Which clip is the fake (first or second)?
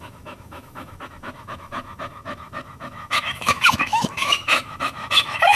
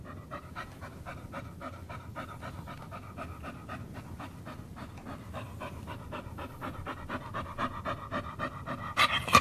first